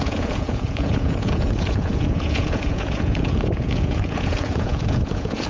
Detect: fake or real fake